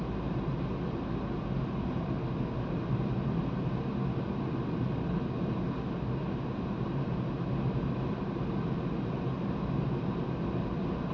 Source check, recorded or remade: recorded